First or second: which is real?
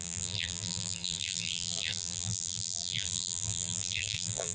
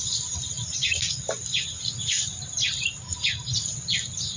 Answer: second